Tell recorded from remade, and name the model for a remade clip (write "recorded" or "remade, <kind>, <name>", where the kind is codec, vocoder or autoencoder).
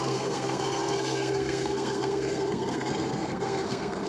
remade, codec, SNAC